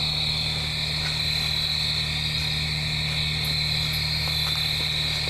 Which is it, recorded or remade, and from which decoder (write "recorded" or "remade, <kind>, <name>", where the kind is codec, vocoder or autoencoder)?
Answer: recorded